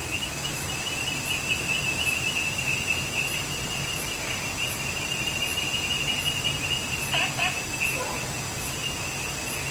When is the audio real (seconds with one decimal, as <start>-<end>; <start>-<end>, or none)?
0.7-9.7

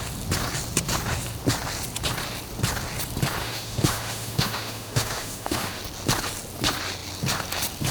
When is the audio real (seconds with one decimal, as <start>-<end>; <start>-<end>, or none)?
0.0-3.4; 5.8-7.9

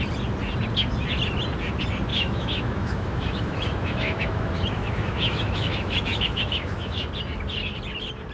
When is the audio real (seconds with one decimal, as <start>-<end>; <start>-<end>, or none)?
0.0-2.1; 7.1-8.3

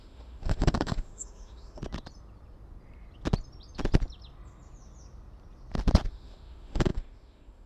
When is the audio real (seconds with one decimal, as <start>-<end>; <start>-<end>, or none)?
1.8-6.1

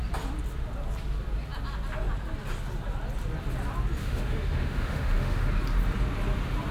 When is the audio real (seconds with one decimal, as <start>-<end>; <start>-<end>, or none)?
0.0-4.0; 5.5-6.7

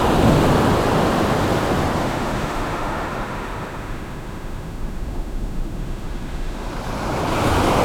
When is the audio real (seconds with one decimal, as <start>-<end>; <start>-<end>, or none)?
0.0-2.0; 6.7-7.8

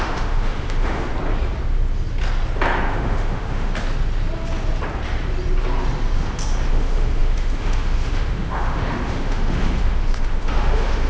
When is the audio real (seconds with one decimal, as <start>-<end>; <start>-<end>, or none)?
1.1-2.8; 3.7-6.7